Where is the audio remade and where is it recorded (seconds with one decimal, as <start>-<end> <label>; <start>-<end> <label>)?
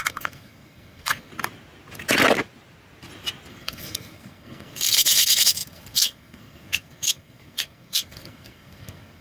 0.0-1.3 remade; 1.3-3.5 recorded; 3.5-9.2 remade